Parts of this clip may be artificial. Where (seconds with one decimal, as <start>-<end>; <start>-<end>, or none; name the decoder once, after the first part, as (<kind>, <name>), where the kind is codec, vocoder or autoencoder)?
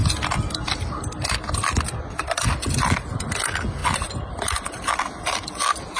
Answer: none